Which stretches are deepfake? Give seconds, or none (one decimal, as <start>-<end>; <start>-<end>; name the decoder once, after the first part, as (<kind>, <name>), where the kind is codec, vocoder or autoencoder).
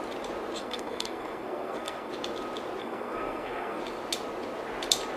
0.6-2.1 (codec, SNAC); 2.8-3.8